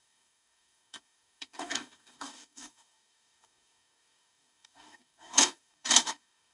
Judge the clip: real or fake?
fake